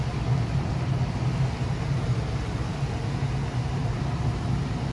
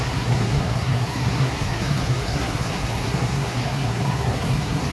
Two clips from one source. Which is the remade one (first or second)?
second